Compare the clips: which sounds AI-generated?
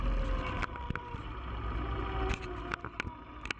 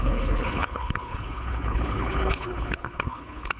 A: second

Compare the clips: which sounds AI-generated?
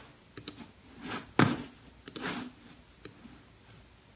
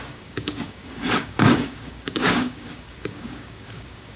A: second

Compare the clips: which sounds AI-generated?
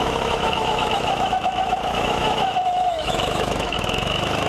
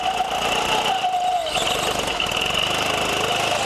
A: first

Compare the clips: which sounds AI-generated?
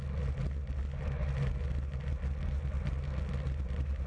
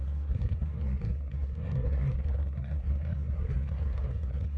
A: second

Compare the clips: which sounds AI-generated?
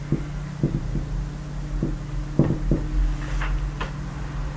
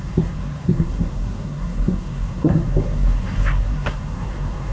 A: second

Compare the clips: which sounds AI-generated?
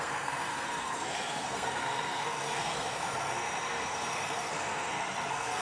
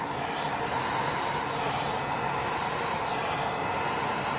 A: first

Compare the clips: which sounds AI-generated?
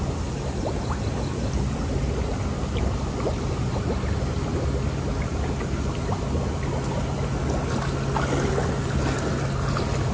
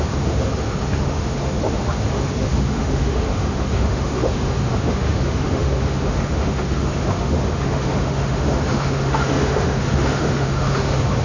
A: second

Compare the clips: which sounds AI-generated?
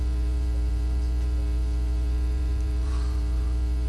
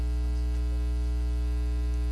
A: first